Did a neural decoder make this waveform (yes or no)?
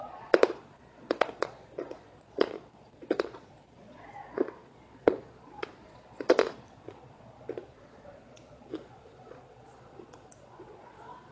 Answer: yes